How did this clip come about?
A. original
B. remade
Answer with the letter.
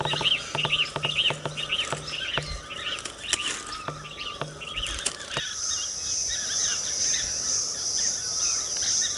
A